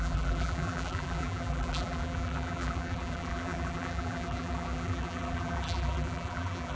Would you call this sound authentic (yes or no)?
no